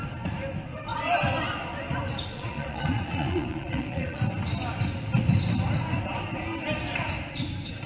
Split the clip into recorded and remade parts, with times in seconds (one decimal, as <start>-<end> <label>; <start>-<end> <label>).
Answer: 0.0-2.3 recorded; 2.3-4.2 remade; 4.2-7.9 recorded